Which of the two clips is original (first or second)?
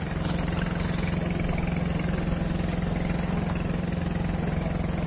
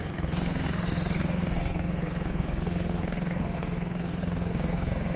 first